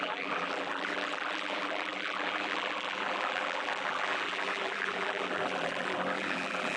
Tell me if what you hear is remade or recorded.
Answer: remade